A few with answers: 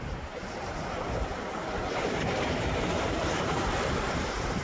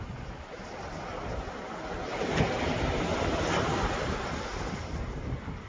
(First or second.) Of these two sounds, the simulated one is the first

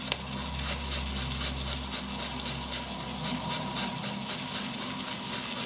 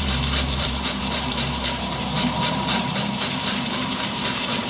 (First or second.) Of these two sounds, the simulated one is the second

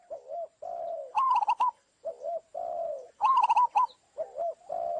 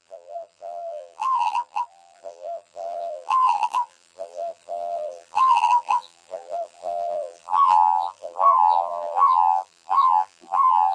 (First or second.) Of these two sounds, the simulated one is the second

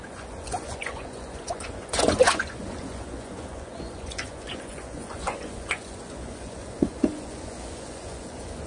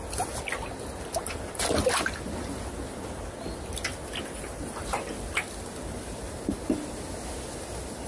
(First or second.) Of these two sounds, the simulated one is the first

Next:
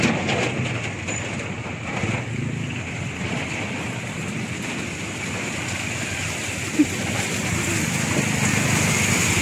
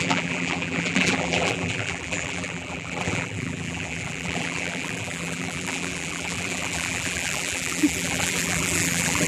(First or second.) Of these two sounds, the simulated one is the second